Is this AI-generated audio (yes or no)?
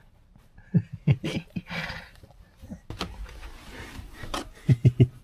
yes